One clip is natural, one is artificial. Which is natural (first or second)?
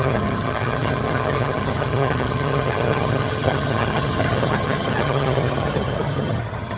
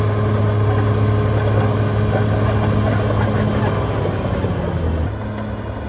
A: second